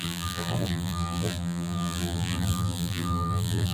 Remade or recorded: remade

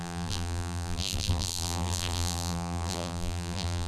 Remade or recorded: remade